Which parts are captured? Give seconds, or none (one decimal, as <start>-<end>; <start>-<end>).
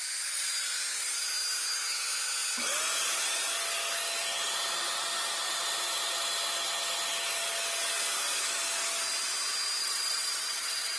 0.0-9.8